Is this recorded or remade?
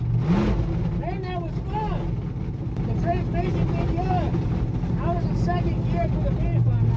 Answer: recorded